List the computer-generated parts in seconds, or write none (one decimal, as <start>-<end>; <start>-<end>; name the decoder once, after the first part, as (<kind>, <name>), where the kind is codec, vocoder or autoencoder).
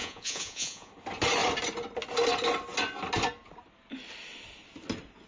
0.0-0.9 (vocoder, Vocos)